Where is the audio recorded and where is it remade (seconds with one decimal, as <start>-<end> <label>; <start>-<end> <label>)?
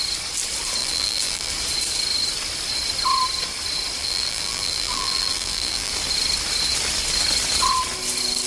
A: 0.0-0.8 recorded; 0.8-1.5 remade; 1.5-4.0 recorded; 4.0-5.9 remade; 5.9-8.5 recorded